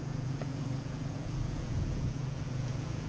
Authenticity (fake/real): fake